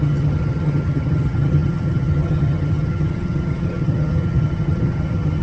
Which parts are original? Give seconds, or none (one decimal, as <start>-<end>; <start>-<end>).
none